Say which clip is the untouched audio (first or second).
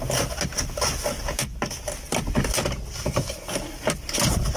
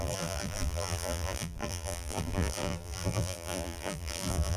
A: first